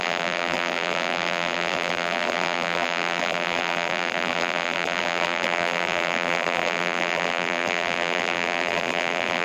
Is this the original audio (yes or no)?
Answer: no